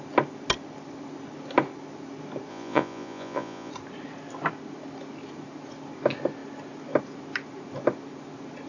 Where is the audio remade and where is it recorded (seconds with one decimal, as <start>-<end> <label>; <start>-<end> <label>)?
0.0-2.5 recorded; 2.5-3.7 remade; 3.7-8.7 recorded